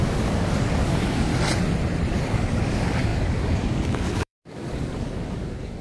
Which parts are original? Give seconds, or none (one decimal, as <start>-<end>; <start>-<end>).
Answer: 1.3-2.1

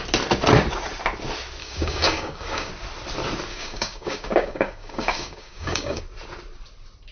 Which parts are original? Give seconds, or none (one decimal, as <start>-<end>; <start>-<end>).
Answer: 0.0-1.6; 2.7-3.5; 6.0-7.1